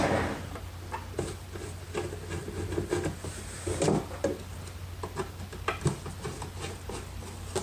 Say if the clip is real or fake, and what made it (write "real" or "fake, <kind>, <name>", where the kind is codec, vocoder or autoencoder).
real